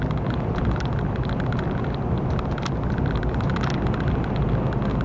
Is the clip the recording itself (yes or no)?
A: yes